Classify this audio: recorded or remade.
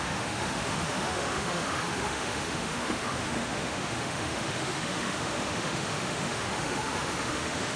remade